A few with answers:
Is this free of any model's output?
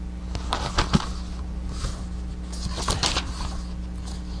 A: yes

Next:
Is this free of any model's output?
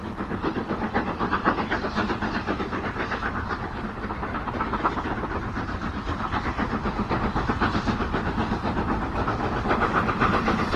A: yes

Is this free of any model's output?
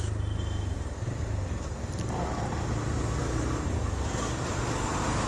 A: yes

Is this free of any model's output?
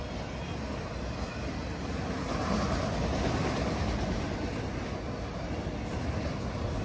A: yes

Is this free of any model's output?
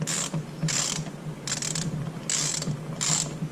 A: yes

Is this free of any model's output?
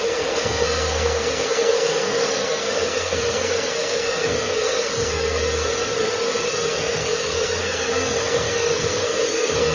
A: no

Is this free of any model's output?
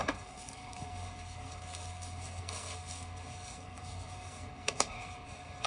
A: no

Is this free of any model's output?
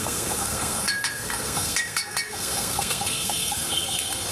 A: no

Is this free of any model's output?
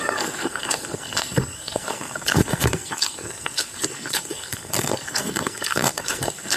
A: no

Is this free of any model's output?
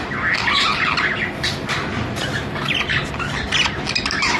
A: yes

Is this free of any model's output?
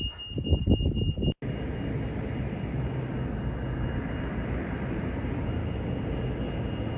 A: yes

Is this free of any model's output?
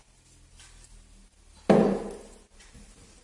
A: yes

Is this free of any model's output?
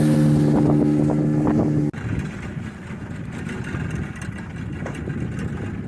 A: yes